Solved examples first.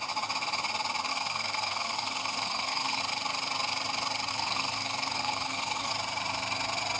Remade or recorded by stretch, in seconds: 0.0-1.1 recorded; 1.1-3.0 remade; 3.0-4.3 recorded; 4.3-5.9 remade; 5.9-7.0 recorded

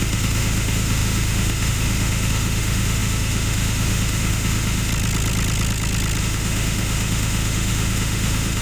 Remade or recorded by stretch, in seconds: 0.0-4.9 remade; 4.9-6.2 recorded; 6.2-8.6 remade

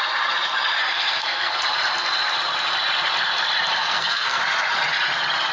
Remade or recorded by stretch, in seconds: 0.0-0.8 recorded; 0.8-1.5 remade; 1.5-3.8 recorded; 3.8-4.4 remade; 4.4-5.5 recorded

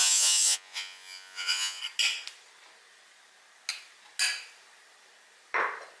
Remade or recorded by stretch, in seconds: 0.0-1.8 remade; 1.8-6.0 recorded